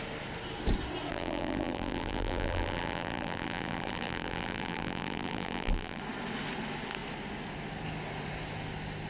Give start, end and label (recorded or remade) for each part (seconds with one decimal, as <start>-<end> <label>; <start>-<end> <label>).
0.0-1.1 recorded; 1.1-6.0 remade; 6.0-9.1 recorded